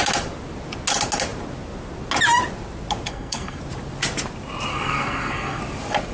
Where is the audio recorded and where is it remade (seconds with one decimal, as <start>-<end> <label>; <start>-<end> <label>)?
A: 0.0-3.1 recorded; 3.1-3.6 remade; 3.6-4.7 recorded; 4.7-5.6 remade; 5.6-6.1 recorded